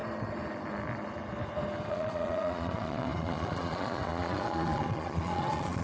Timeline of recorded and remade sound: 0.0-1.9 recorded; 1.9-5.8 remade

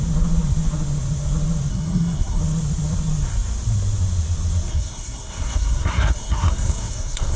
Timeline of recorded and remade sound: 0.0-1.7 recorded; 1.7-2.4 remade; 2.4-4.7 recorded; 4.7-7.4 remade

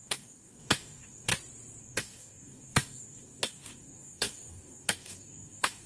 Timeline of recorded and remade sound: 0.0-1.3 remade; 1.3-1.8 recorded; 1.8-5.9 remade